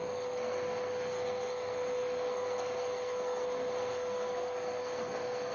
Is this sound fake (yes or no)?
yes